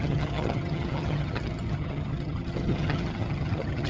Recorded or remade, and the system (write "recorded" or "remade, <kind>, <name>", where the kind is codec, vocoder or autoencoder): remade, vocoder, HiFi-GAN